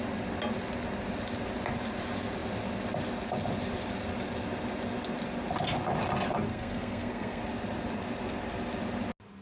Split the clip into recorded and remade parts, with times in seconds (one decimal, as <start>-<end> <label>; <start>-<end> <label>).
0.0-6.5 recorded; 6.5-7.4 remade; 7.4-9.4 recorded